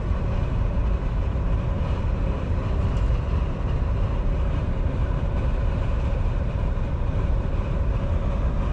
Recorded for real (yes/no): no